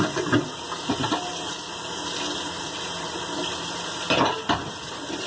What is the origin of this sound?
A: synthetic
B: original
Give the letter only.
B